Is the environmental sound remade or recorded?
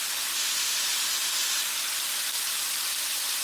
recorded